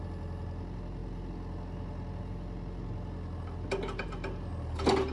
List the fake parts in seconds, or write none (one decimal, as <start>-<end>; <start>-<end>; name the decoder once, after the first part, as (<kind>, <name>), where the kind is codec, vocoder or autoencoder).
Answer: none